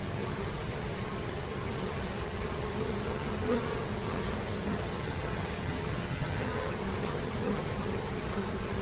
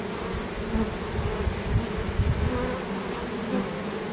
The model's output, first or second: first